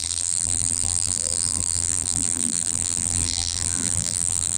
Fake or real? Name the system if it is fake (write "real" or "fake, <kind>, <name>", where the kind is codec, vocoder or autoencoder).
fake, vocoder, BigVGAN v2